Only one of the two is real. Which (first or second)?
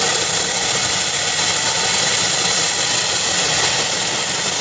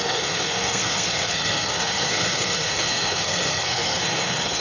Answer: first